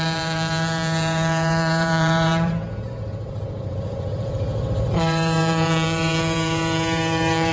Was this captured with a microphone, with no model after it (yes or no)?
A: no